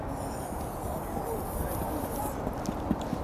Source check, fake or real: real